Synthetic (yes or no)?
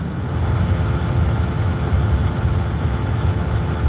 no